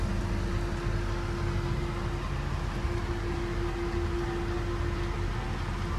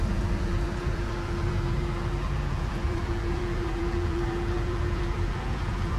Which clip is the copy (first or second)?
second